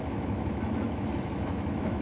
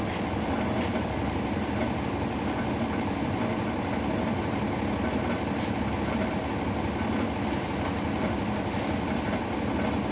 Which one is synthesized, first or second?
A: first